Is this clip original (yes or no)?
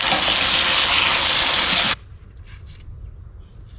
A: yes